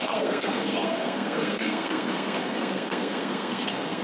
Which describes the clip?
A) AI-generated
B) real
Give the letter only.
A